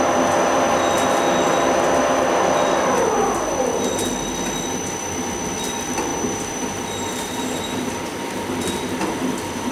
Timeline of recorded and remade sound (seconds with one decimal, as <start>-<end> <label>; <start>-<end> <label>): 0.0-6.1 recorded; 6.1-8.0 remade; 8.0-9.7 recorded